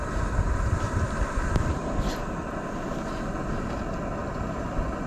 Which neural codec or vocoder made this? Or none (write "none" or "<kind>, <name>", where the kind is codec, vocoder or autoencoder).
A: none